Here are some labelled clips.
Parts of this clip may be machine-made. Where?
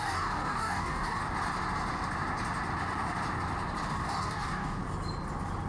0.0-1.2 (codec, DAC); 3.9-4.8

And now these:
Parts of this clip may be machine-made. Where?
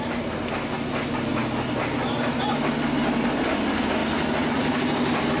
none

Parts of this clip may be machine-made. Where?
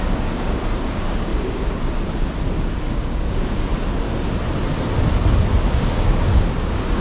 0.0-1.3 (codec, DAC); 2.8-3.7; 5.5-7.0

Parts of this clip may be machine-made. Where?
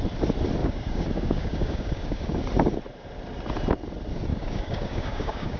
0.6-2.4 (codec, DAC); 4.3-5.6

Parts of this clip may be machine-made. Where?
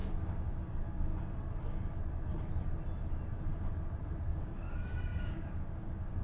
0.0-1.1 (codec, DAC); 4.2-6.2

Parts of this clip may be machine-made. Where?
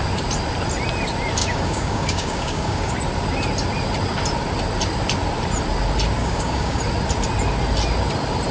1.4-2.9 (codec, DAC); 6.2-6.8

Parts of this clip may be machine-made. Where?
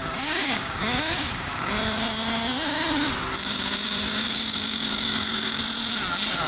0.0-1.7 (codec, DAC); 3.4-5.6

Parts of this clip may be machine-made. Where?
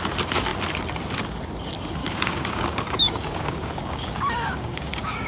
2.0-5.3 (codec, DAC)